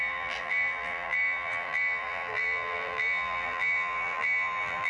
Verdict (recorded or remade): remade